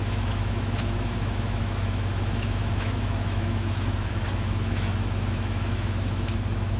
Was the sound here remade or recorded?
remade